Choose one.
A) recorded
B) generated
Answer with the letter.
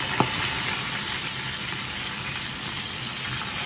A